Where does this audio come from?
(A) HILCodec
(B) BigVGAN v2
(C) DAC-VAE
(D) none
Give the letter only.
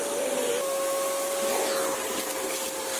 D